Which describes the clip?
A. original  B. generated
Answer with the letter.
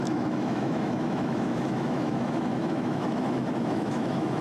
B